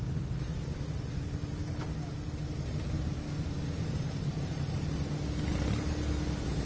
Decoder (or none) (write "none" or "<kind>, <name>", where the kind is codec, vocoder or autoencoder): none